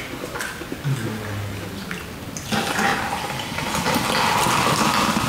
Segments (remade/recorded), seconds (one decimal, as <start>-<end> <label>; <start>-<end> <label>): 0.0-5.3 recorded